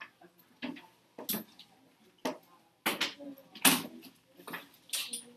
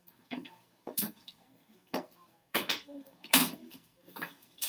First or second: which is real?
first